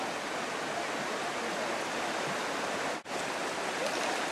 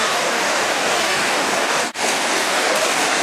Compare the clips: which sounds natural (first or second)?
first